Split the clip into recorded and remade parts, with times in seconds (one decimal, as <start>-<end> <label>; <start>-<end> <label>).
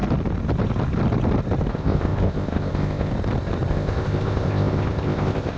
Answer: 0.0-1.7 recorded; 1.7-3.1 remade; 3.1-3.7 recorded; 3.7-5.6 remade